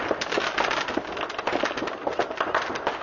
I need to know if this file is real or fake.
real